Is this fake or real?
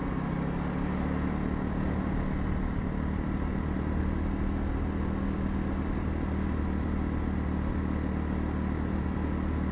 real